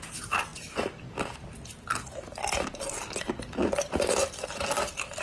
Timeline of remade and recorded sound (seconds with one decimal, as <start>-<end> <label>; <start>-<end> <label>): 0.0-5.2 recorded